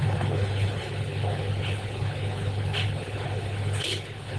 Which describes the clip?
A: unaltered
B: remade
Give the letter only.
B